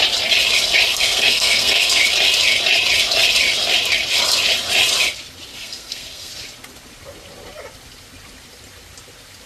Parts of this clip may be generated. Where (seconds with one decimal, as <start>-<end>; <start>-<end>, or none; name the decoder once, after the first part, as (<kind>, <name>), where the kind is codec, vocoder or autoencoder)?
0.9-2.0 (codec, SNAC); 5.5-6.3